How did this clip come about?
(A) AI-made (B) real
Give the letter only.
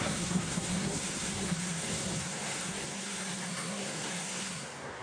A